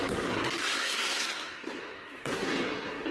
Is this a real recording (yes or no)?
no